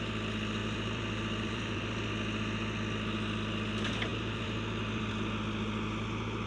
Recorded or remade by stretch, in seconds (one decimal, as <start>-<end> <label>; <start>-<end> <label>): 0.0-0.6 recorded; 0.6-2.1 remade; 2.1-4.1 recorded; 4.1-5.1 remade; 5.1-6.5 recorded